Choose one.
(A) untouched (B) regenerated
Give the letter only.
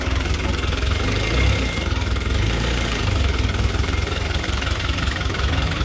B